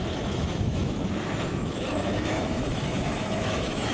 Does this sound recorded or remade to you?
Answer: remade